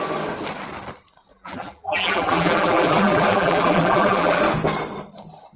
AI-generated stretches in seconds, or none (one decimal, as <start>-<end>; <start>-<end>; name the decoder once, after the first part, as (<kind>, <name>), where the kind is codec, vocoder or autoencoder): 1.3-4.4 (vocoder, BigVGAN v2)